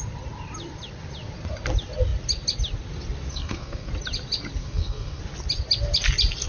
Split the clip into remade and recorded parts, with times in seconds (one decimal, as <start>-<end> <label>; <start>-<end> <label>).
0.0-3.3 recorded; 3.3-3.9 remade; 3.9-4.6 recorded; 4.6-5.2 remade; 5.2-6.5 recorded